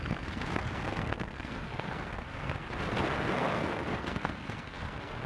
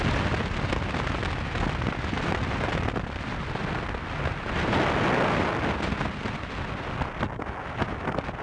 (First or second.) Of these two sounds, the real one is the second